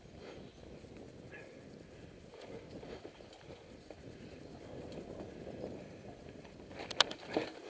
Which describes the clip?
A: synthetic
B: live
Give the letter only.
B